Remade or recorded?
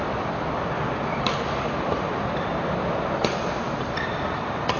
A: remade